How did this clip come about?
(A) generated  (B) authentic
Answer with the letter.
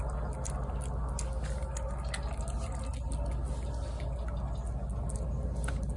B